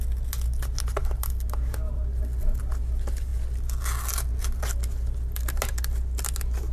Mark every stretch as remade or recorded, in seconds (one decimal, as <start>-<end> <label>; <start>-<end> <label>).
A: 0.0-6.7 recorded